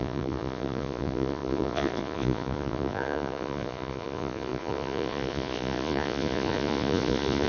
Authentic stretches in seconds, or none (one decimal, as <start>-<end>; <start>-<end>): none